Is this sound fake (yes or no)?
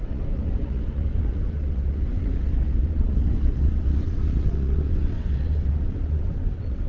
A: yes